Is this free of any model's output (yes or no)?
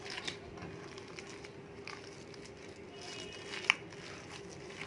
yes